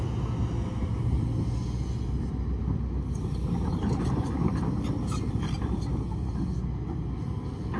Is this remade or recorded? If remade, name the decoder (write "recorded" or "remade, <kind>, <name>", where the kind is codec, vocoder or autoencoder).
recorded